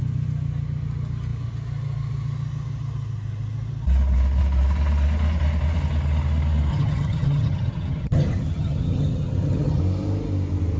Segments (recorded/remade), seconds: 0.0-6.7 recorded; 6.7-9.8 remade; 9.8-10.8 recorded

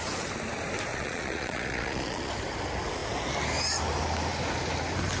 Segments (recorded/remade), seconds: 0.0-0.9 recorded; 0.9-2.3 remade; 2.3-5.2 recorded